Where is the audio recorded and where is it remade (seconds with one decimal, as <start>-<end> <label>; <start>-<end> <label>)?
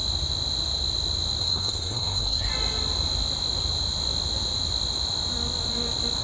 0.0-1.4 recorded; 1.4-2.5 remade; 2.5-6.2 recorded